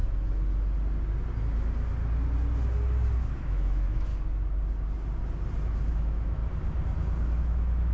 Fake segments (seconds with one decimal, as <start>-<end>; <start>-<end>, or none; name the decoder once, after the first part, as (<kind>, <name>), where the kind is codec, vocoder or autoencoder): 3.3-4.1 (autoencoder, DAC-VAE); 5.9-6.4; 7.4-7.9